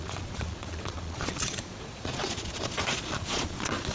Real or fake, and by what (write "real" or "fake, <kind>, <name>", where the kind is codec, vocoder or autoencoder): fake, vocoder, Vocos